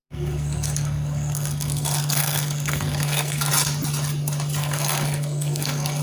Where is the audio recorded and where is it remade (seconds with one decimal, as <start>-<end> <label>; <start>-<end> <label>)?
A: 0.0-3.5 remade; 3.5-4.6 recorded; 4.6-6.0 remade

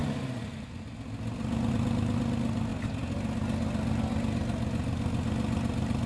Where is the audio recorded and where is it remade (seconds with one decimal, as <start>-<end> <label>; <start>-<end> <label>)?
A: 0.0-6.1 recorded

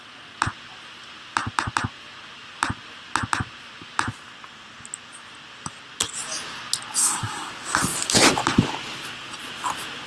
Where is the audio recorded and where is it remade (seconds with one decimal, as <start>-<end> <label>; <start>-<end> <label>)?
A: 0.0-7.0 recorded; 7.0-7.5 remade; 7.5-10.1 recorded

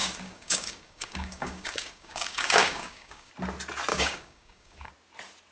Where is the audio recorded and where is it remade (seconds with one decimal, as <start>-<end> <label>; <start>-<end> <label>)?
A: 0.0-3.3 remade; 3.3-3.9 recorded; 3.9-4.9 remade; 4.9-5.5 recorded

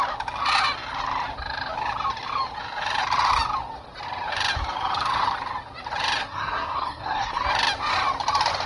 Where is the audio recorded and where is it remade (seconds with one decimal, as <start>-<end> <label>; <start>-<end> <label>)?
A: 0.0-6.2 recorded; 6.2-7.4 remade; 7.4-8.7 recorded

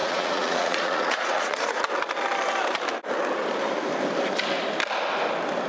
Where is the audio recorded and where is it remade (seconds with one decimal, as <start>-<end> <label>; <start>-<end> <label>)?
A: 0.0-1.9 remade; 1.9-5.7 recorded

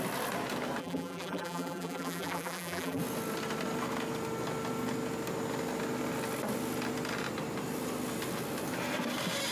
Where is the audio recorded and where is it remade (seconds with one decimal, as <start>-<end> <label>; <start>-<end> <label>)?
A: 0.0-0.8 recorded; 0.8-3.0 remade; 3.0-9.5 recorded